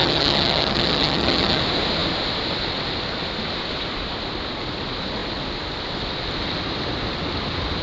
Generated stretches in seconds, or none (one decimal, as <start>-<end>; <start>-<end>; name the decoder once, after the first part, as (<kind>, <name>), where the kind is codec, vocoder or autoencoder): 0.0-1.6 (vocoder, HiFi-GAN)

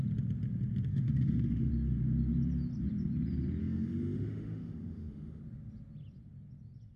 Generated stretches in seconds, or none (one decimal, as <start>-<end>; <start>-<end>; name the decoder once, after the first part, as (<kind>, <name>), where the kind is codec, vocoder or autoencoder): 0.9-1.7 (autoencoder, DAC-VAE); 3.6-5.4

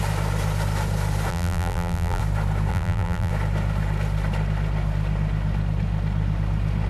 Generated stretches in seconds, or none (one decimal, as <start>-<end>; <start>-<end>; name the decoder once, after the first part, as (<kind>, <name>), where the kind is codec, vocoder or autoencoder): 1.3-2.2 (vocoder, BigVGAN v2); 2.7-3.3

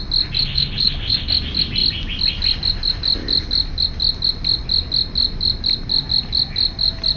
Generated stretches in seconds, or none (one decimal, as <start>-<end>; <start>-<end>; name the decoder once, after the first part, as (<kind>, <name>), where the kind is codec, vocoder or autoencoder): 0.4-1.3 (codec, HILCodec)

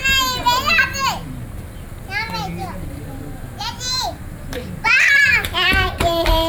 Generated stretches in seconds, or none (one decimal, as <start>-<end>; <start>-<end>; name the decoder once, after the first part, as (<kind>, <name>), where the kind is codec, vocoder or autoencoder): 0.7-1.9 (vocoder, BigVGAN v2); 3.6-6.5

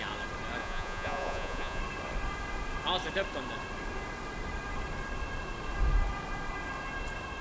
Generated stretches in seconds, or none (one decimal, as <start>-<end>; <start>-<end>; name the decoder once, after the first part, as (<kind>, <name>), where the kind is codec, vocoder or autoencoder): 0.6-1.8 (vocoder, Vocos)

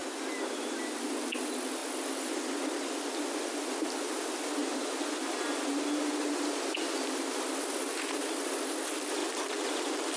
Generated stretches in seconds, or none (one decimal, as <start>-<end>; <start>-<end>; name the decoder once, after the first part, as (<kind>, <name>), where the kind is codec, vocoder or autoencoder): 1.8-2.4 (vocoder, BigVGAN v2); 9.2-10.2

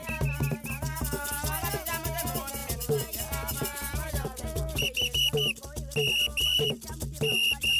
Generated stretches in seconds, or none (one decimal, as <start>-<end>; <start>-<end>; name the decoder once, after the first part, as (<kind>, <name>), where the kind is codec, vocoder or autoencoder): 2.6-4.8 (vocoder, BigVGAN v2); 6.3-7.8